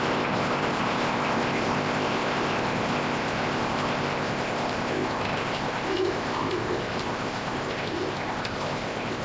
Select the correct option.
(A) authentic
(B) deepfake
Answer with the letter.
B